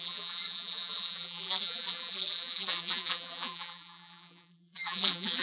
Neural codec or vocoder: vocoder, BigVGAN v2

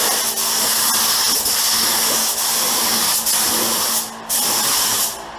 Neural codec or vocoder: none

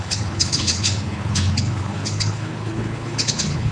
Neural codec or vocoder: codec, HILCodec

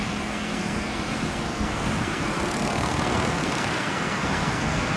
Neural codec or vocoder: codec, SNAC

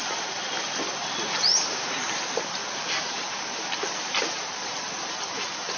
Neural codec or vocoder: vocoder, BigVGAN v2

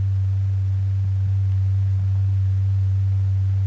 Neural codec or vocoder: none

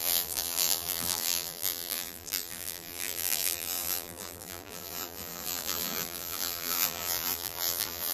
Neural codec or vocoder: vocoder, BigVGAN v2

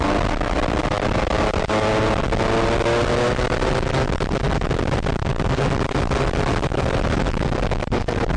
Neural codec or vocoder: none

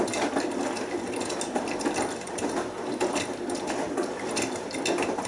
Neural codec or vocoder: none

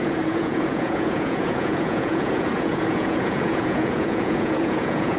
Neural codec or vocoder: vocoder, Vocos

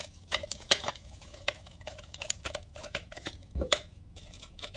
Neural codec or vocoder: autoencoder, DAC-VAE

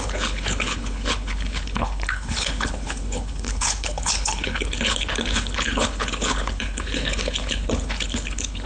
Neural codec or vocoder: codec, HILCodec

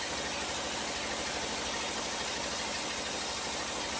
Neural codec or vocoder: none